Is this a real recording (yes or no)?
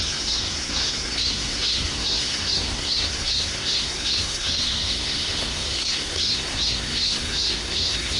no